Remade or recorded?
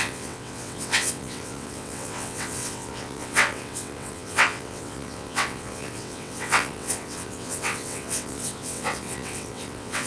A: remade